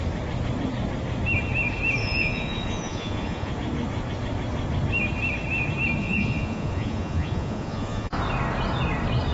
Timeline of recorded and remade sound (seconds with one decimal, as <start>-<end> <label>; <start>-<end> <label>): 0.0-2.0 recorded; 2.0-3.5 remade; 3.5-6.0 recorded; 6.0-8.1 remade; 8.1-9.3 recorded